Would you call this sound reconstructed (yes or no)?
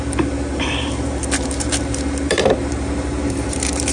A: yes